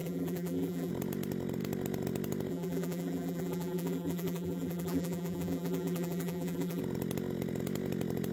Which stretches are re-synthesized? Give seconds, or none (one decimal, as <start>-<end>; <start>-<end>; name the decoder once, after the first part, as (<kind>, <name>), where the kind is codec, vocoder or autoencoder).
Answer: 0.0-0.9 (vocoder, BigVGAN v2); 2.5-6.8